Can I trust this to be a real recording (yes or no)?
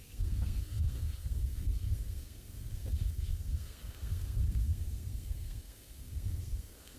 no